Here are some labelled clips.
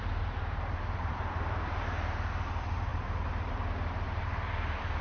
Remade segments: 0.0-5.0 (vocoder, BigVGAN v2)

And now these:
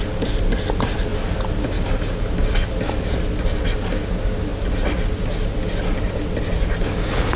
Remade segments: none

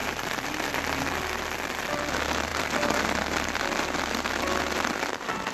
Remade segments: 0.0-1.7 (vocoder, BigVGAN v2); 2.5-3.6